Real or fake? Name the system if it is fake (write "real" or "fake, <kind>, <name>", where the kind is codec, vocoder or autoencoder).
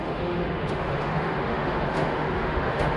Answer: fake, autoencoder, DAC-VAE